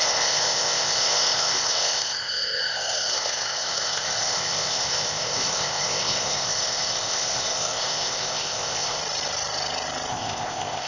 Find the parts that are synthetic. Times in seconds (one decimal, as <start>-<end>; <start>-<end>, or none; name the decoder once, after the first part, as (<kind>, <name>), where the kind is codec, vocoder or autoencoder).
0.0-9.0 (codec, ZipCodec); 10.1-10.9